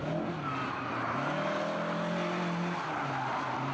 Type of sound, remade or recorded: recorded